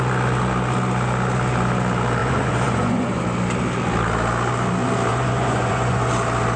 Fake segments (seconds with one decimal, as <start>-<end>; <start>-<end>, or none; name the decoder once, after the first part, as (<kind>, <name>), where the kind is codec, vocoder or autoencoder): 2.2-3.2 (vocoder, Vocos); 5.1-6.1